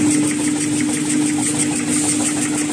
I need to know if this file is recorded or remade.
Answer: recorded